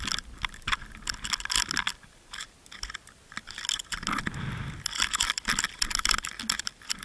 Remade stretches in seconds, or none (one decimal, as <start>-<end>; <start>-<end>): none